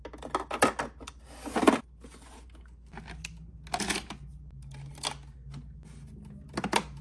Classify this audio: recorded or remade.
recorded